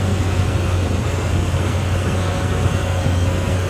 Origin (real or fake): fake